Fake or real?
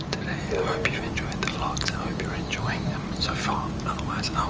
real